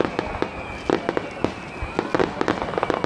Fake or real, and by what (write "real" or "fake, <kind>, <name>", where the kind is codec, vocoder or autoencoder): real